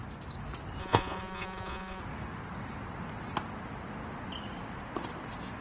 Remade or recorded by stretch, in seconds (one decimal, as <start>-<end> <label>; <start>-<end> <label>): 0.0-0.8 recorded; 0.8-2.0 remade; 2.0-5.6 recorded